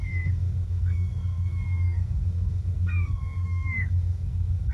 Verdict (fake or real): fake